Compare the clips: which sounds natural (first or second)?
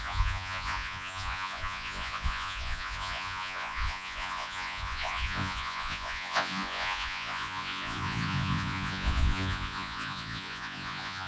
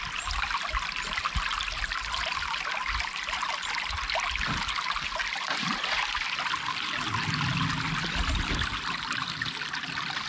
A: second